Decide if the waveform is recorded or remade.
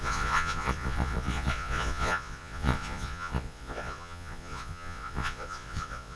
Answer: remade